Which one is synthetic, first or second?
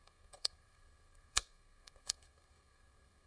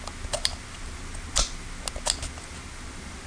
first